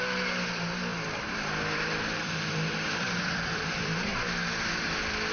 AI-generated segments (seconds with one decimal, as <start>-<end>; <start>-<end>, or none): 0.9-4.1